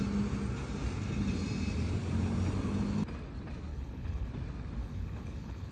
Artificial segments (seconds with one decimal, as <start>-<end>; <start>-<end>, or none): 3.7-4.3; 4.8-5.7

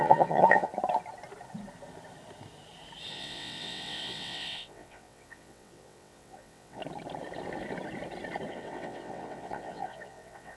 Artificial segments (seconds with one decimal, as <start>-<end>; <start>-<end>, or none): 0.0-0.7; 3.1-6.8; 8.5-10.6

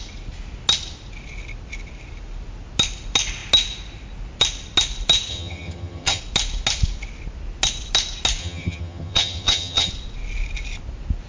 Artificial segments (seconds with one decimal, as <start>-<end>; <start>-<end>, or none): 5.3-6.2; 8.4-9.9